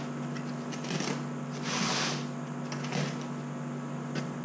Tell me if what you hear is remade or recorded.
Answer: recorded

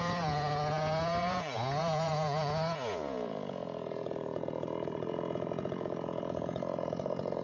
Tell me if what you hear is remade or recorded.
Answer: remade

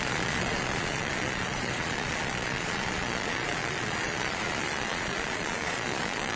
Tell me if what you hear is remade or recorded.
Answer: remade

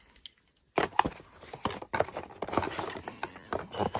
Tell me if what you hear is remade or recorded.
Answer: recorded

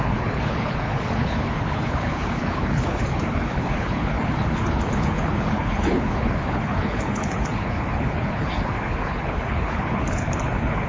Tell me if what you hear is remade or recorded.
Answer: remade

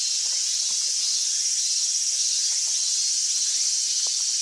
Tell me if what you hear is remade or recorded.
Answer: recorded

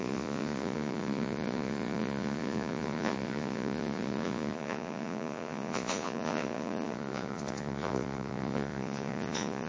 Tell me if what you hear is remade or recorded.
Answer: remade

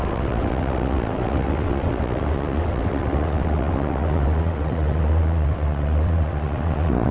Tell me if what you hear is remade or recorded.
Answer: remade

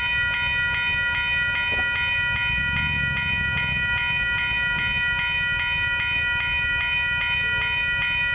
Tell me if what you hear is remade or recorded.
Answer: recorded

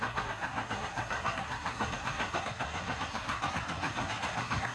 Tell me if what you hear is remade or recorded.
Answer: remade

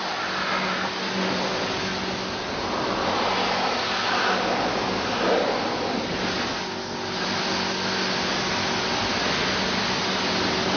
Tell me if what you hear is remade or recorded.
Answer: recorded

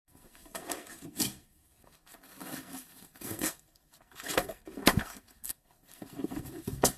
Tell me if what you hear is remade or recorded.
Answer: remade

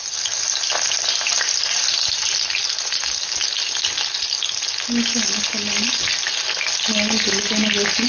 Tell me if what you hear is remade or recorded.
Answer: recorded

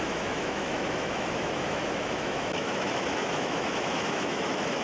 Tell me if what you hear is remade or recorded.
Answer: remade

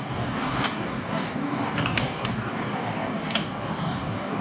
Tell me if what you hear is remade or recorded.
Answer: remade